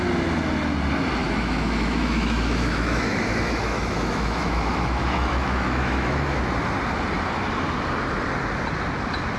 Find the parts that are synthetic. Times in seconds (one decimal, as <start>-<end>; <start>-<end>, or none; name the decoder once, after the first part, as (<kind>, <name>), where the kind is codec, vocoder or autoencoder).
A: 1.2-6.4 (autoencoder, DAC-VAE)